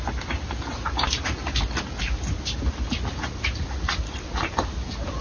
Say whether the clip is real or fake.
real